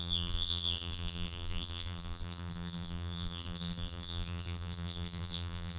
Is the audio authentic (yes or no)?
no